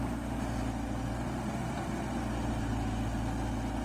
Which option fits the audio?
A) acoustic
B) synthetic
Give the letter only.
A